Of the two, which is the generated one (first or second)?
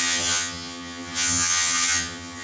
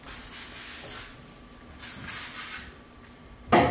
first